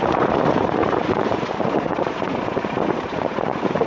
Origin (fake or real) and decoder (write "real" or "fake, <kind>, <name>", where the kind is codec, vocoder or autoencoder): fake, vocoder, Vocos